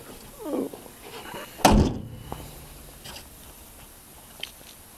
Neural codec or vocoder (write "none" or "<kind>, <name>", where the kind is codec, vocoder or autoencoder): none